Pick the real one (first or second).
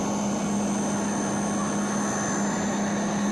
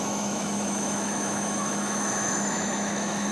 first